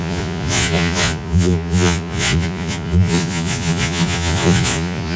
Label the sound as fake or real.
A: fake